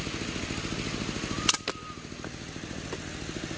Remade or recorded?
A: recorded